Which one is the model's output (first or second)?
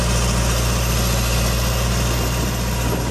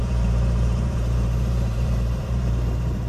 second